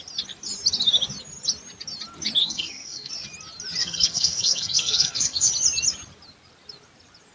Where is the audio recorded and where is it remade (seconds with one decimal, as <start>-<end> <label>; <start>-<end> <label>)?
0.0-2.4 recorded; 2.4-3.1 remade; 3.1-3.8 recorded; 3.8-5.5 remade; 5.5-7.3 recorded